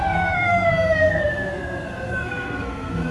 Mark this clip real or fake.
fake